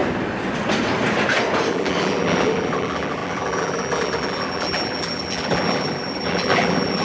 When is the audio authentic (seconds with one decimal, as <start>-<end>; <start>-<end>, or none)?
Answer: 0.0-1.7